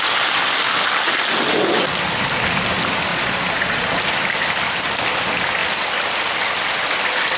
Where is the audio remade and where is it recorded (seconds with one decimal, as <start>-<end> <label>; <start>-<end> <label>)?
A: 0.0-3.1 recorded; 3.1-4.0 remade; 4.0-7.4 recorded